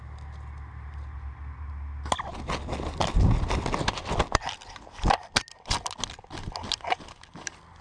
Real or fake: real